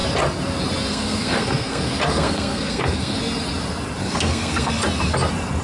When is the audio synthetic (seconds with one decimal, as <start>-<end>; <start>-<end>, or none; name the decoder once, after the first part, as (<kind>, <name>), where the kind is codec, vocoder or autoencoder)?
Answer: 0.9-3.2 (codec, SNAC); 4.0-4.7